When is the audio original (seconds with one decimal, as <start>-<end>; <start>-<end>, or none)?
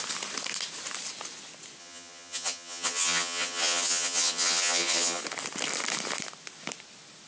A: 0.0-1.8; 5.2-7.3